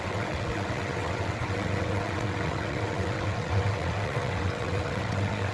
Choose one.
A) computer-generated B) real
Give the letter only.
A